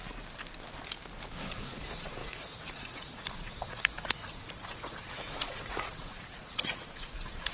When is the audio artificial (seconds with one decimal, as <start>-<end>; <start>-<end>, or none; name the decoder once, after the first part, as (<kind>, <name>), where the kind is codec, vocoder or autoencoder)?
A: 1.3-7.5 (vocoder, Vocos)